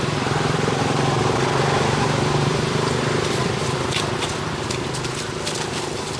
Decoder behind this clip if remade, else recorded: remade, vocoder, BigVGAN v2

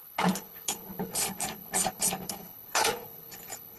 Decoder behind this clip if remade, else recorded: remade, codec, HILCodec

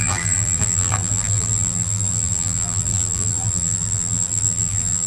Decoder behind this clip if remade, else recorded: remade, vocoder, BigVGAN v2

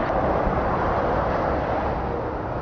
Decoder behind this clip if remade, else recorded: recorded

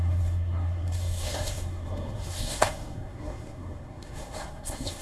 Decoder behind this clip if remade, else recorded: remade, codec, SNAC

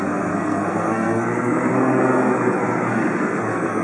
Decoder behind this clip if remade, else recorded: remade, codec, SNAC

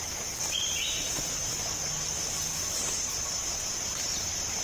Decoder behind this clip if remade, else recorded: recorded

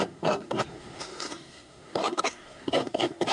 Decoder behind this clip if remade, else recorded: remade, codec, SNAC